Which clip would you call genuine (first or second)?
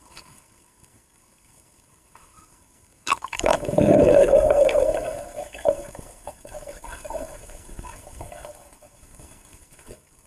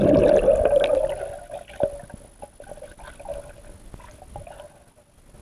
second